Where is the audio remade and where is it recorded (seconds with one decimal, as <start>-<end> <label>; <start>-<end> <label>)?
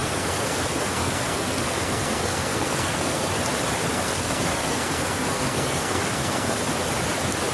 0.0-3.3 remade; 3.3-3.9 recorded; 3.9-6.7 remade; 6.7-7.5 recorded